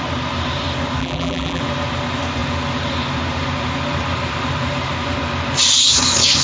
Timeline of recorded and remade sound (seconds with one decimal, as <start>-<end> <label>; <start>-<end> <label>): 0.0-1.0 recorded; 1.0-1.6 remade; 1.6-6.4 recorded